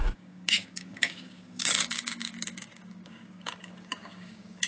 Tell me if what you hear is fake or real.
fake